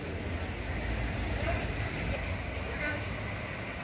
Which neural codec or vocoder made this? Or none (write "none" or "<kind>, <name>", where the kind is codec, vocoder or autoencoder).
none